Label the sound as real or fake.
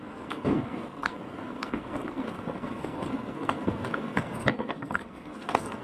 fake